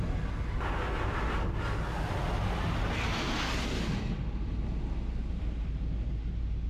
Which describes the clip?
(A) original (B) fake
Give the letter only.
A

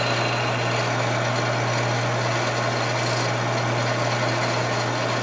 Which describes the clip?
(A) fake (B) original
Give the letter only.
B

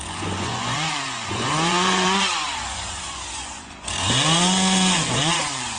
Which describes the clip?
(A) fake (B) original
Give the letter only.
A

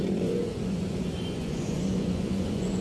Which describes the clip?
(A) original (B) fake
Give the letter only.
B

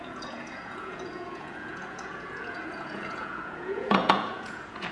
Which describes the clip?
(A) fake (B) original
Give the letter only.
A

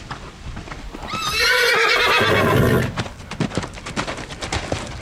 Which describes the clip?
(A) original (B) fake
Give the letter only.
A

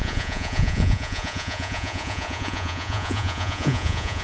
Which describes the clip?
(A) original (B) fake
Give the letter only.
B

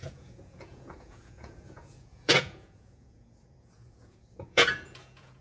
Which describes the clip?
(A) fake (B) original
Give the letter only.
A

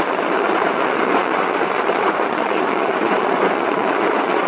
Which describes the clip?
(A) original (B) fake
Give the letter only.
B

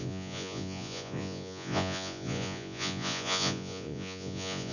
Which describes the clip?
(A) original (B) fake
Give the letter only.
B